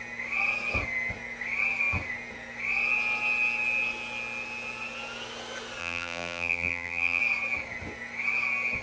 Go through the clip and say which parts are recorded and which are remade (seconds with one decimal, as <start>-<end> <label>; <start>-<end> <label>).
0.0-5.8 recorded; 5.8-7.2 remade; 7.2-8.8 recorded